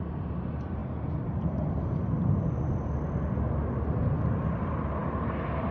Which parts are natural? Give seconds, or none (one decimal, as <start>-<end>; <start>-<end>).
0.0-5.7